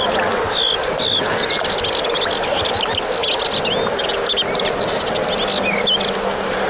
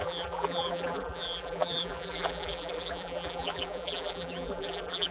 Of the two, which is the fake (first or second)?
second